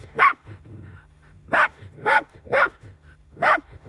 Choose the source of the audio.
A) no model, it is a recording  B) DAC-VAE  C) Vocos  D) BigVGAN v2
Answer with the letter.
B